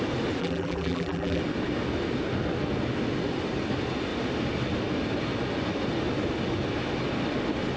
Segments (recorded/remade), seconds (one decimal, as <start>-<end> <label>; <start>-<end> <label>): 0.0-0.4 recorded; 0.4-1.4 remade; 1.4-7.8 recorded